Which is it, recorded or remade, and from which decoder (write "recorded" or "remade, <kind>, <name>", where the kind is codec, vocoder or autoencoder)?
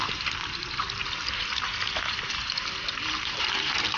remade, vocoder, BigVGAN v2